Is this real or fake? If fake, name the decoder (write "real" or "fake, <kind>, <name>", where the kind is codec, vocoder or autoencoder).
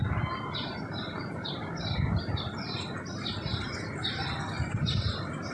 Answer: real